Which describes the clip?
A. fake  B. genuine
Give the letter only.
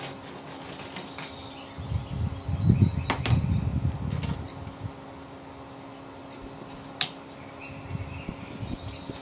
B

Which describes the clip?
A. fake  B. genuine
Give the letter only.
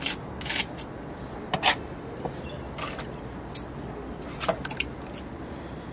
B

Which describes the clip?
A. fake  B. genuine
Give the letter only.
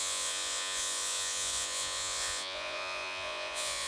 A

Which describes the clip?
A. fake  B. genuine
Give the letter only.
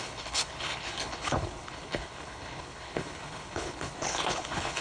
A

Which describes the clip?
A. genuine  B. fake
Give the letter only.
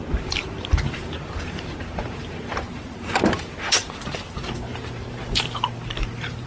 B